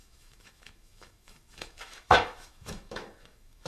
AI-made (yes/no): yes